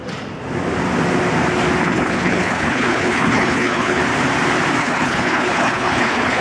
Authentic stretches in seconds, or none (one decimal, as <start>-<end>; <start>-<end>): 0.0-1.8; 4.0-4.8

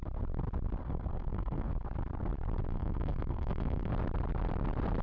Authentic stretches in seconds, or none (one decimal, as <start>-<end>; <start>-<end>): 0.0-0.8; 1.7-2.7; 3.9-5.0